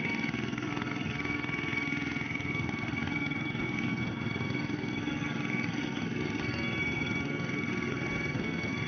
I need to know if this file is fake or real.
fake